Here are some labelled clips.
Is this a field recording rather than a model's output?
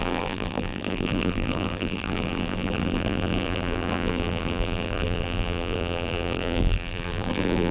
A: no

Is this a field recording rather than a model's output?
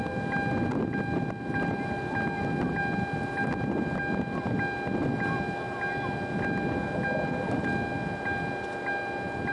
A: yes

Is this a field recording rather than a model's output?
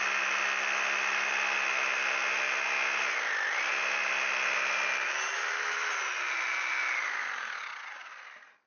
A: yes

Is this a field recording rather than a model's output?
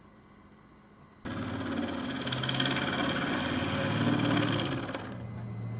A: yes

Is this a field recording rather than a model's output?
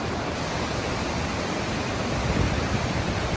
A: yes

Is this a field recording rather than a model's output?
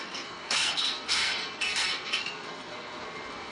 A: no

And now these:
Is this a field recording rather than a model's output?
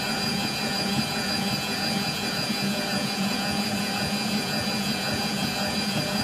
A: no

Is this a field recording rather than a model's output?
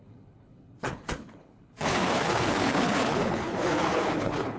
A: no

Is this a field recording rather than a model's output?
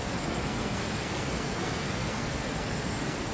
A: no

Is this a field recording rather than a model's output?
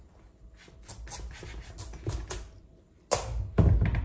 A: yes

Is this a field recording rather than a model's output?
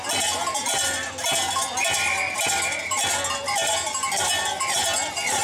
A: yes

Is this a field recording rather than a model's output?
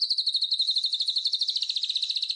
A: yes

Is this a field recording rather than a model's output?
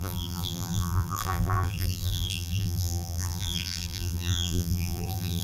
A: no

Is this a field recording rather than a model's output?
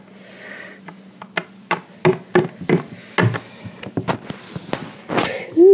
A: yes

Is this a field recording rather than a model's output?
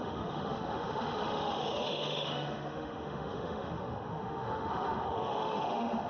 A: no